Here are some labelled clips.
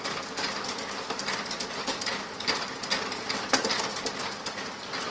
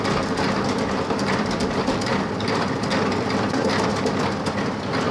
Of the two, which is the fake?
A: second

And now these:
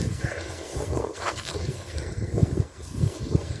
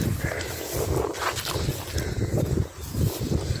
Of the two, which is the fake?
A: first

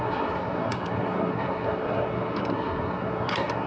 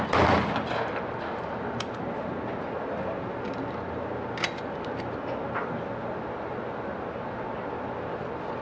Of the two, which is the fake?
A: first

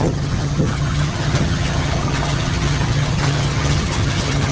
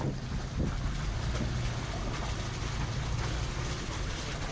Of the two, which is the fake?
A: first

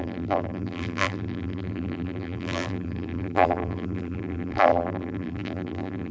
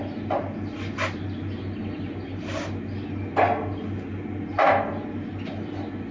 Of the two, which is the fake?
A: first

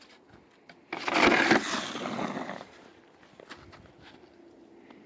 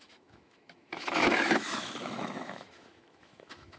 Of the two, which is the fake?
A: second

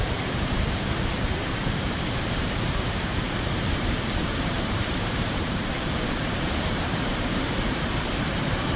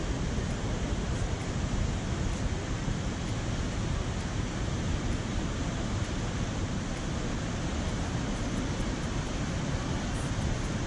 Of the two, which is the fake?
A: first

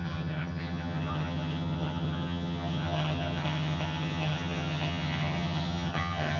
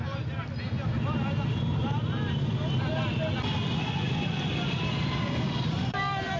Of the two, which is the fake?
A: first